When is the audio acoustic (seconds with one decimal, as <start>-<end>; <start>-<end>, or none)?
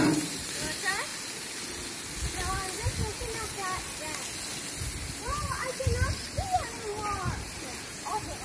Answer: 1.1-5.1; 6.9-7.4